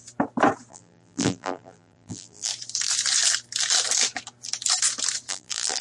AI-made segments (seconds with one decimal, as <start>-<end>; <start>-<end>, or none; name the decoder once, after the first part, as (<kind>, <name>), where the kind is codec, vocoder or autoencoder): 0.7-2.5 (vocoder, BigVGAN v2); 5.3-5.8